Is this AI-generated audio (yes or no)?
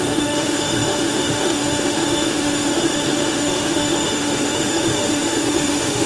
yes